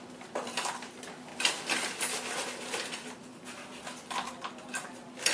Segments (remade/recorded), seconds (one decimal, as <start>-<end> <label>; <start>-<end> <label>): 0.0-1.3 remade; 1.3-4.5 recorded; 4.5-5.3 remade